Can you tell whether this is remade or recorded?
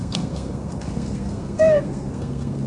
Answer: remade